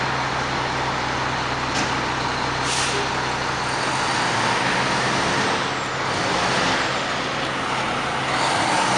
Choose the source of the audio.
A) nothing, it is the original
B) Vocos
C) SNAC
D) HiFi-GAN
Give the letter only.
A